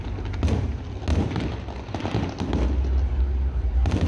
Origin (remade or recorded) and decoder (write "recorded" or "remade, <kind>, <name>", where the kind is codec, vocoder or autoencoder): recorded